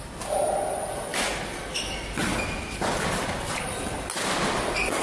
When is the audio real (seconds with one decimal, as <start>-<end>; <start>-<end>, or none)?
0.0-5.0